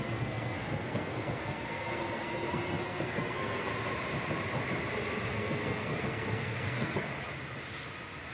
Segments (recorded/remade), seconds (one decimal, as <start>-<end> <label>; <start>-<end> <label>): 0.0-3.7 remade; 3.7-5.3 recorded; 5.3-7.1 remade; 7.1-8.3 recorded